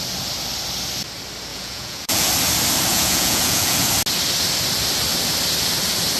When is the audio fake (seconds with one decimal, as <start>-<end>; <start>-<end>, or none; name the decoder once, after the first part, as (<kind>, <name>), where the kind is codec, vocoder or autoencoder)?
1.5-2.3 (vocoder, Vocos); 2.9-3.9